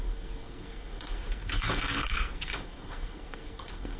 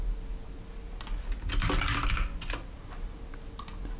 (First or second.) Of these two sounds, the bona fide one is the second